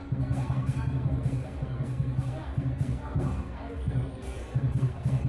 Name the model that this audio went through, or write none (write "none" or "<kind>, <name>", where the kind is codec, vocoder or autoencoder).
codec, SNAC